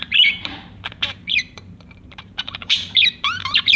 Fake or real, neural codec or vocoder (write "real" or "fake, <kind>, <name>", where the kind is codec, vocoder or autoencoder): fake, vocoder, BigVGAN v2